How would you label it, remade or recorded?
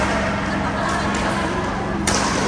recorded